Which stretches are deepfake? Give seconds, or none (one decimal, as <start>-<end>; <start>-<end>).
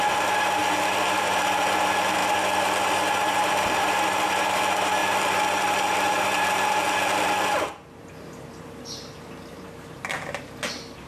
0.6-1.7; 5.0-9.3